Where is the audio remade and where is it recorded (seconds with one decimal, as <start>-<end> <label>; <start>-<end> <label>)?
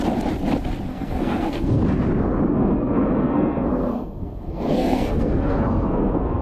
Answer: 0.0-0.9 recorded; 0.9-1.8 remade; 1.8-2.5 recorded; 2.5-6.4 remade